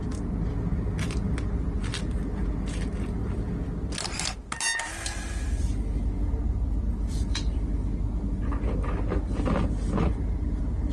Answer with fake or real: real